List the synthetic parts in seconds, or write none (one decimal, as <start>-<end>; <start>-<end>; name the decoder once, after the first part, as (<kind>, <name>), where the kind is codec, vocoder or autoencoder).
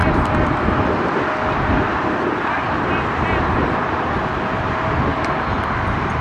0.0-3.7 (vocoder, BigVGAN v2); 5.1-5.6